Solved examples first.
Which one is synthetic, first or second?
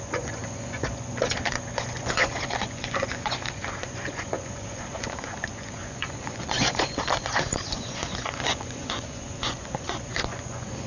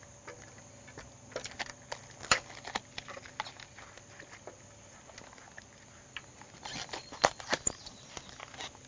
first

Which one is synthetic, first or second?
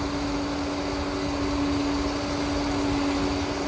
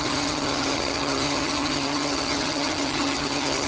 second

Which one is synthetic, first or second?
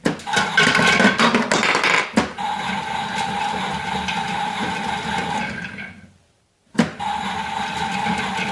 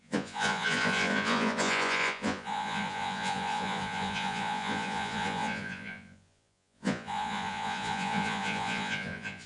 second